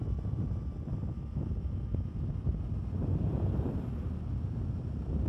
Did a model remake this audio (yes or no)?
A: no